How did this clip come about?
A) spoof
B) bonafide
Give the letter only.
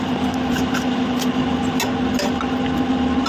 B